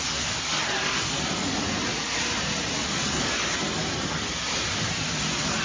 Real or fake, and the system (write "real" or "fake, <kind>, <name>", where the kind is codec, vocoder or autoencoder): real